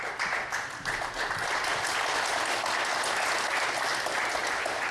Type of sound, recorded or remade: recorded